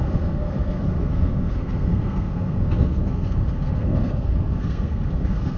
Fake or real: fake